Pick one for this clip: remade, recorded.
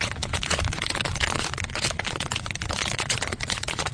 remade